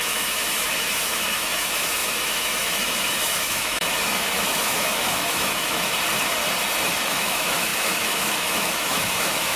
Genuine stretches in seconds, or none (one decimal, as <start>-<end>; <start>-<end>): 5.9-7.1